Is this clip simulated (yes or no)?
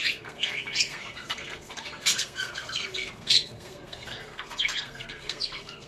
yes